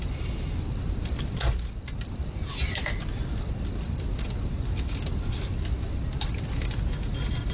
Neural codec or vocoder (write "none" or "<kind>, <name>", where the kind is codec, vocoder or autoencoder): none